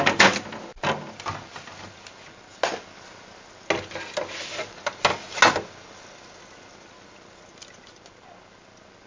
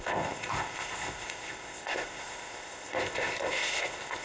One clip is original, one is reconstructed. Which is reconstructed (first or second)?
second